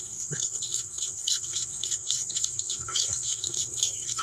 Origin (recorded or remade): remade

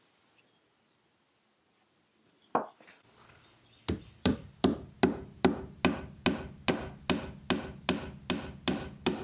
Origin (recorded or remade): recorded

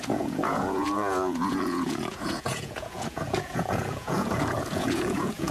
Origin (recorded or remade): remade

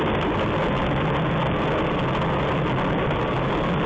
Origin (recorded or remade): recorded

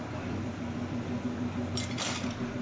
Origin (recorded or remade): recorded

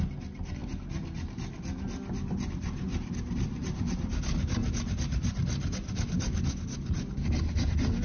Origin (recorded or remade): recorded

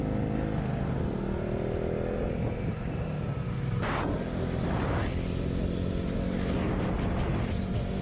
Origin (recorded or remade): recorded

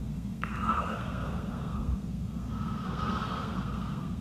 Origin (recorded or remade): remade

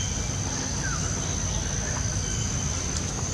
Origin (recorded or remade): recorded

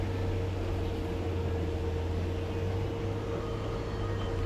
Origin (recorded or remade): recorded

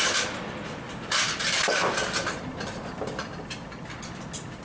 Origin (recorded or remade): recorded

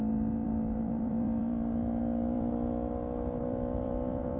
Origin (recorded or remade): remade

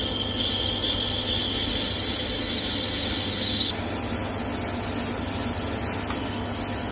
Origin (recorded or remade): recorded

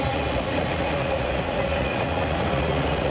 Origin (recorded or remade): remade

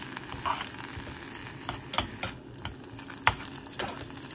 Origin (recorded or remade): recorded